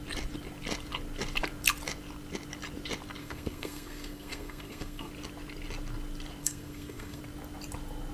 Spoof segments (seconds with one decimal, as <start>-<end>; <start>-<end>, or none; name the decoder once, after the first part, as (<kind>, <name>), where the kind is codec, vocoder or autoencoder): 3.2-5.1 (codec, SNAC); 6.4-7.2